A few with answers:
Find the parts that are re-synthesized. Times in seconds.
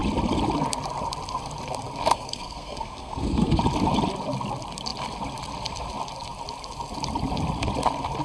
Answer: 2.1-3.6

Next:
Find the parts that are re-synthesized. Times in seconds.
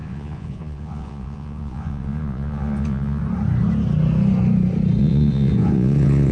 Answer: 0.0-3.2; 5.0-6.3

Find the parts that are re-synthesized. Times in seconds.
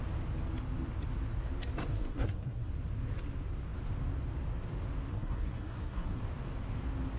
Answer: 1.9-2.7; 5.1-6.2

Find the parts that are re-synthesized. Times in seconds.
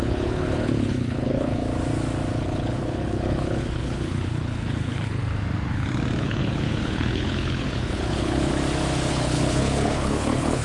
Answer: 0.0-1.6; 2.4-5.2; 6.2-8.5; 9.1-10.6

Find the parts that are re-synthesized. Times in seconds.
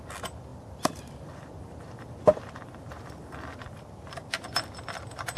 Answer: none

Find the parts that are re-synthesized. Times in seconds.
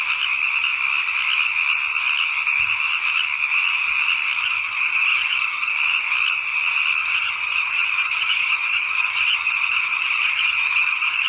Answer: 4.4-5.7; 7.0-11.3